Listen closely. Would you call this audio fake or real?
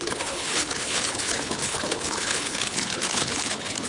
fake